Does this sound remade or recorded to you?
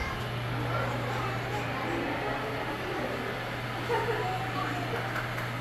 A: recorded